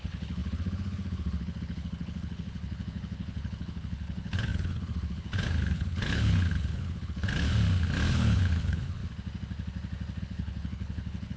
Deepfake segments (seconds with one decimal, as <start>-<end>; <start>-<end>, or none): 0.0-7.5; 8.1-9.0; 10.2-11.4